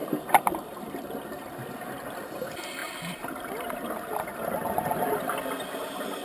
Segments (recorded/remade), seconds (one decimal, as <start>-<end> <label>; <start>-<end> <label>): 0.0-0.9 remade; 0.9-6.2 recorded